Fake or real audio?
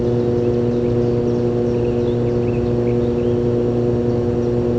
real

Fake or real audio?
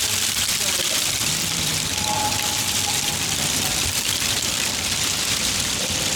fake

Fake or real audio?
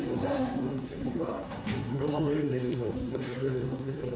fake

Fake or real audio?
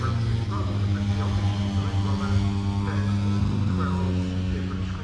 real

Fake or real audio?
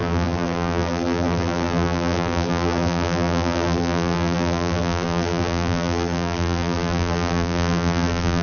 fake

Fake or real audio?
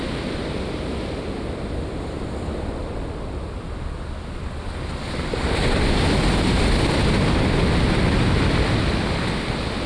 real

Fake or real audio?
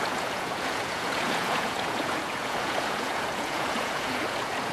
fake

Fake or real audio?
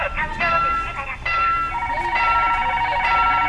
real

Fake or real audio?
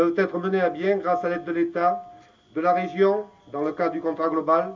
real